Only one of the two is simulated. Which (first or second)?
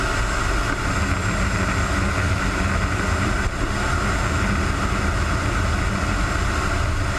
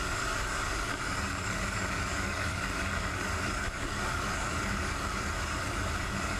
second